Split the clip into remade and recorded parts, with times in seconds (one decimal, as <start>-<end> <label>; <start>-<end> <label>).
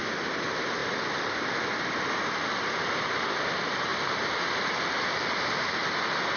0.0-6.4 recorded